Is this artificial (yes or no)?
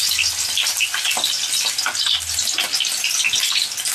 no